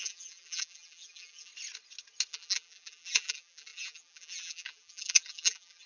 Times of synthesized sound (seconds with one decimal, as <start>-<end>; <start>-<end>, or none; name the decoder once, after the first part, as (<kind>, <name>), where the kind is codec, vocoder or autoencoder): 0.0-1.5 (vocoder, BigVGAN v2); 2.3-5.9